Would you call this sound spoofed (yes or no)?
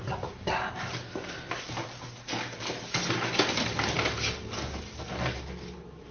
no